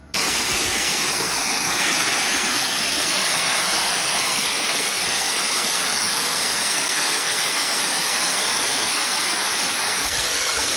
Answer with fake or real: fake